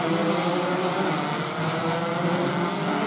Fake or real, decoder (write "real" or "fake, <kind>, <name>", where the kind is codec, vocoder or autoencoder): real